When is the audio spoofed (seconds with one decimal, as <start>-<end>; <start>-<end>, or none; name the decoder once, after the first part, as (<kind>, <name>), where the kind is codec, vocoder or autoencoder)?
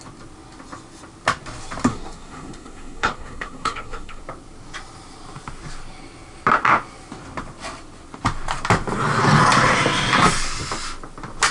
1.9-4.2 (codec, SNAC)